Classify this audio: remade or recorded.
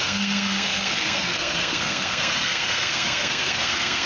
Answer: remade